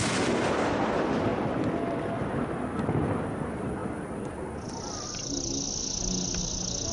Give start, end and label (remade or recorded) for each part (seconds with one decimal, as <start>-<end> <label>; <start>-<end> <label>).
0.0-6.9 recorded